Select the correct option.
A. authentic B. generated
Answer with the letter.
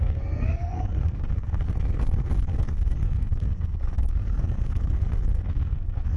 B